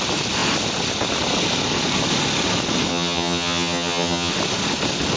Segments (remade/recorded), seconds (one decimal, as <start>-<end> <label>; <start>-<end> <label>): 0.0-2.9 recorded; 2.9-4.3 remade; 4.3-5.2 recorded